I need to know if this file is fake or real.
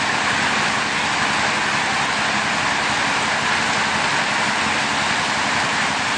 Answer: real